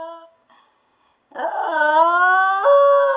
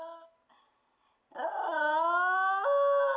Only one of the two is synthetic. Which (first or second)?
first